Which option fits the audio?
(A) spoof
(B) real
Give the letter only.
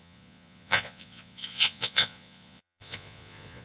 A